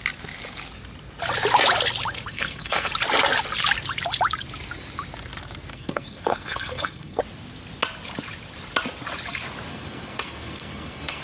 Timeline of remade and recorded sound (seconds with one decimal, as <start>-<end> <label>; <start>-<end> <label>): 0.0-2.3 recorded; 2.3-2.9 remade; 2.9-5.7 recorded; 5.7-7.2 remade; 7.2-9.7 recorded; 9.7-11.2 remade